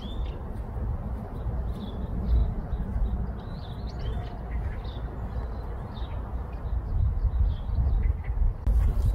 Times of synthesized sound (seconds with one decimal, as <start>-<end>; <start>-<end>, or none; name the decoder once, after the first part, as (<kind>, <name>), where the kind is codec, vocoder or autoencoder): none

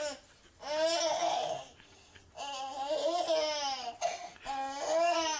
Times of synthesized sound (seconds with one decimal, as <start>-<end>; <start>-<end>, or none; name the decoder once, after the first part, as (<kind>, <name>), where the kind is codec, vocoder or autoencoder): none

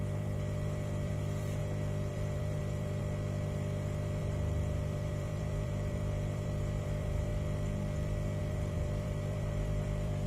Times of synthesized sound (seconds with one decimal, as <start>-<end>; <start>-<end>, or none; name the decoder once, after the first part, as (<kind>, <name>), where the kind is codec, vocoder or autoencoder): 0.0-3.0 (vocoder, BigVGAN v2); 4.2-7.3; 8.4-10.3